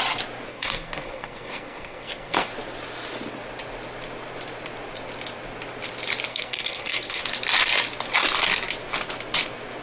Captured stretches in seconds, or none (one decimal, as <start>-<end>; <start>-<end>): 0.0-0.5; 2.5-6.3; 7.2-9.8